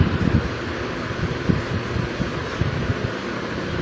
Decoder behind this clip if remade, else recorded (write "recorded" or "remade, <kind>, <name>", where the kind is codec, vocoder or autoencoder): recorded